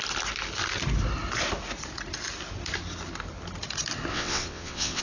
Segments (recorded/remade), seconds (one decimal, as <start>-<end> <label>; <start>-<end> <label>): 0.0-4.1 recorded; 4.1-5.0 remade